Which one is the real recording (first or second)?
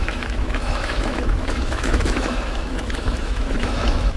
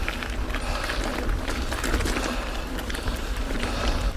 second